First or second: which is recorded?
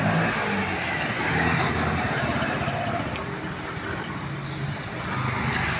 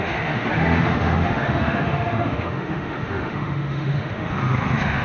first